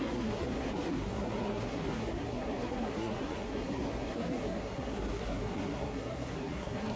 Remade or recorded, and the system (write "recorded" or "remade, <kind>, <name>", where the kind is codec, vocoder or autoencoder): remade, codec, SNAC